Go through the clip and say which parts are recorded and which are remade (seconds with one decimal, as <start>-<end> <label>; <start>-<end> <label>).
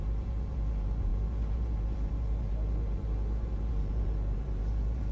0.0-5.1 remade